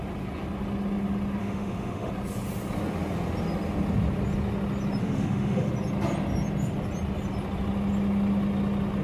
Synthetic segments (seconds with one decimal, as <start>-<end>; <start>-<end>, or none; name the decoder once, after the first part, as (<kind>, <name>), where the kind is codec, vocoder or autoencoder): 1.4-2.1 (autoencoder, DAC-VAE); 5.0-5.7